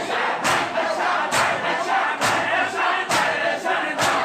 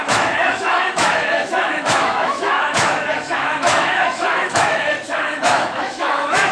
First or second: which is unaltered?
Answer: first